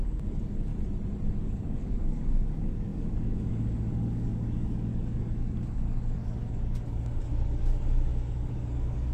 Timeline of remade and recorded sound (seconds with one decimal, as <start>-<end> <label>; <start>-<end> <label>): 0.0-0.7 remade; 0.7-1.4 recorded; 1.4-9.1 remade